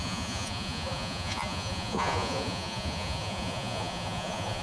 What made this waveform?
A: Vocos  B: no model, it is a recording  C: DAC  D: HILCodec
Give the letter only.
A